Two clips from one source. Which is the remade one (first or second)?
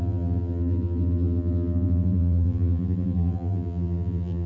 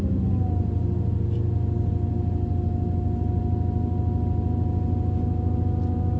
first